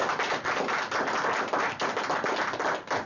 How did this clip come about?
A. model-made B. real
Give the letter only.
B